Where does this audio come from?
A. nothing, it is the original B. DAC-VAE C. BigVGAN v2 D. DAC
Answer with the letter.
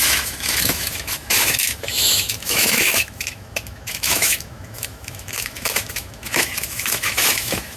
B